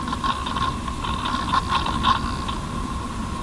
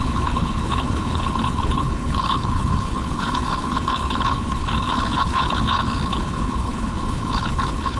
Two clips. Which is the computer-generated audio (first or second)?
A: second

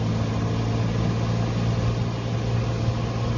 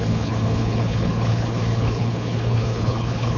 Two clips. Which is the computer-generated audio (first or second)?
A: second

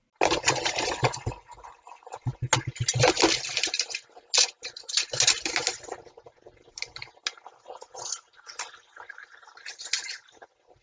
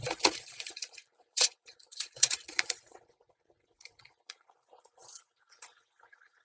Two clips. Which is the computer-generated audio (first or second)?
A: second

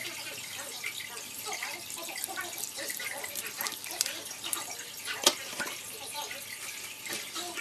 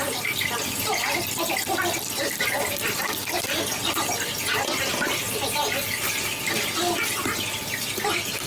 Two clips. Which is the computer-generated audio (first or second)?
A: second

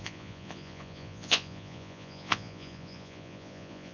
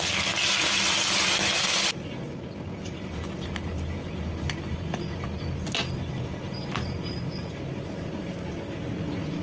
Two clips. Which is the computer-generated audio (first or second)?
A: first